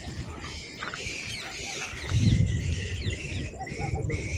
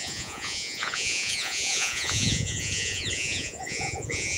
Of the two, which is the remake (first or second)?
second